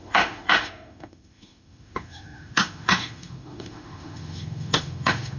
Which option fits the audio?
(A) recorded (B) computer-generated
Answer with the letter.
B